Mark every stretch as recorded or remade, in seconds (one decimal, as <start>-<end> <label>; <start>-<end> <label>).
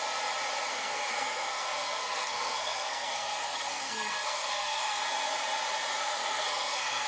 0.0-0.7 recorded; 0.7-5.0 remade; 5.0-6.0 recorded; 6.0-7.1 remade